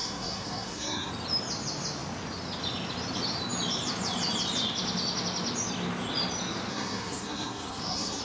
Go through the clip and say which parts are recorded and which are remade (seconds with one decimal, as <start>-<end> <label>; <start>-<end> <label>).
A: 0.0-1.1 remade; 1.1-6.7 recorded; 6.7-8.2 remade

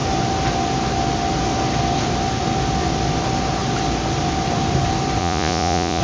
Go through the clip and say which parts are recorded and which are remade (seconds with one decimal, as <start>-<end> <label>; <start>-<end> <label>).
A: 0.0-5.2 recorded; 5.2-6.0 remade

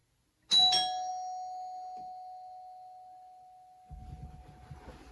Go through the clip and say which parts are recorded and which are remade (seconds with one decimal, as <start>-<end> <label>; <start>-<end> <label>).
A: 0.0-5.1 recorded

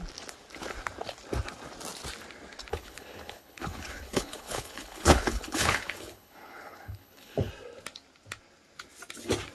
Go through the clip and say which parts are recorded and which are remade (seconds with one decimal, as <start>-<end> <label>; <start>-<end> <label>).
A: 0.0-2.7 recorded; 2.7-7.5 remade; 7.5-9.5 recorded

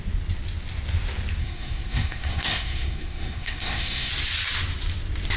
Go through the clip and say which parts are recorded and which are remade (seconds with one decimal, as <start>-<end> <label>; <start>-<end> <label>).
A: 0.0-1.4 recorded; 1.4-4.1 remade; 4.1-5.4 recorded

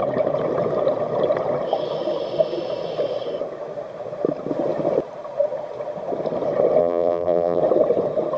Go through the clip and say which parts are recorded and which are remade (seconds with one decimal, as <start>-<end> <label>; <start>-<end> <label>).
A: 0.0-6.8 recorded; 6.8-7.6 remade; 7.6-8.4 recorded

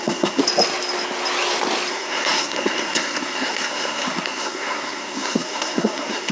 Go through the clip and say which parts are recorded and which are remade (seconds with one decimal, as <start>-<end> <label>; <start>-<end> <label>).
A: 0.0-0.4 remade; 0.4-1.9 recorded; 1.9-6.3 remade